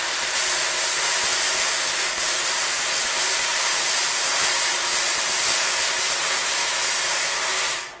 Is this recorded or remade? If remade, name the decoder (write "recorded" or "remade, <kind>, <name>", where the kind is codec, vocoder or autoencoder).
remade, vocoder, BigVGAN v2